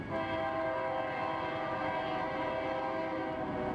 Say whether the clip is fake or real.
real